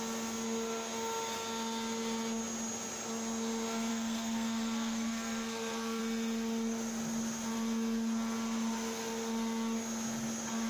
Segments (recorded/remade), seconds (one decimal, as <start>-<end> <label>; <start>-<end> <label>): 0.0-3.9 recorded; 3.9-6.0 remade; 6.0-10.7 recorded